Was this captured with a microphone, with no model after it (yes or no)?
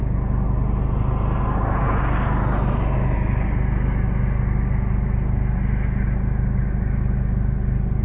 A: yes